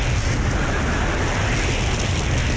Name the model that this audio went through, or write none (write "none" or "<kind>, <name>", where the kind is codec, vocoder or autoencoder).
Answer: none